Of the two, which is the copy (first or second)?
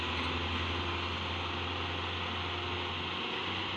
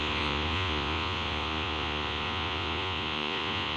second